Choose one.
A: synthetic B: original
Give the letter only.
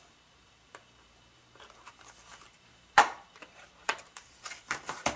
A